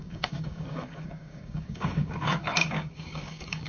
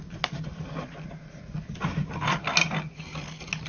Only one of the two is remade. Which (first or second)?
first